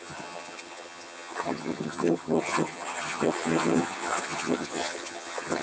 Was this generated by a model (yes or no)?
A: yes